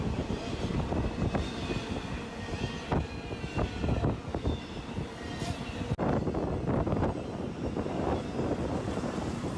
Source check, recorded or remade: recorded